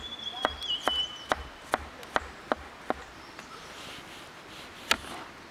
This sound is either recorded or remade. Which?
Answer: recorded